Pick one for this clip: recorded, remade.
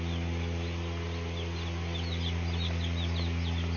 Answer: recorded